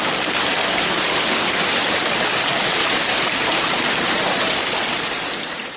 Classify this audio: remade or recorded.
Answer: remade